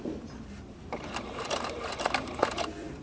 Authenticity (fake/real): fake